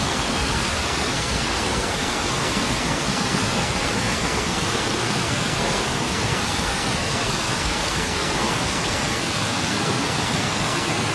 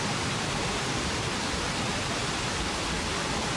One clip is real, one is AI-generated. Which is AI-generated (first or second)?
first